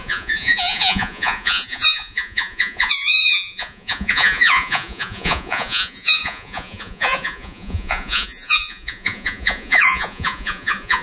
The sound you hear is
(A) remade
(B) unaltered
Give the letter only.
A